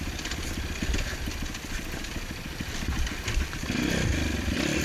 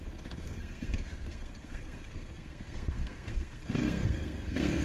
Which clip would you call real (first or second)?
first